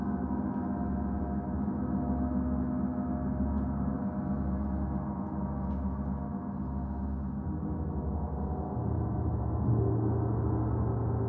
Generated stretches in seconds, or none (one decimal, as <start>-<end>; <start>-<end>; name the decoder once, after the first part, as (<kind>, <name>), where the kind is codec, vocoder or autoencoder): none